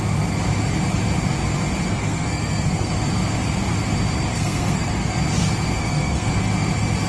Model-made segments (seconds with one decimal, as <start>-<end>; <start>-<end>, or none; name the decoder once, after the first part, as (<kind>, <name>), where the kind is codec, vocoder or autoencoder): 1.9-2.9 (codec, SNAC); 4.3-5.2; 5.8-6.3